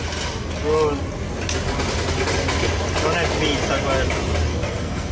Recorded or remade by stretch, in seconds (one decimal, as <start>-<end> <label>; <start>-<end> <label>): 0.0-4.5 recorded; 4.5-5.1 remade